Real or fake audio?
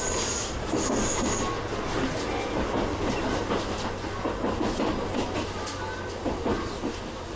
real